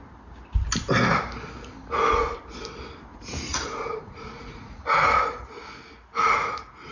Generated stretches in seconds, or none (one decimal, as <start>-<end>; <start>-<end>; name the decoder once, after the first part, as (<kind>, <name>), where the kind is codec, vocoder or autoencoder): 3.1-5.6 (vocoder, Vocos); 6.2-6.9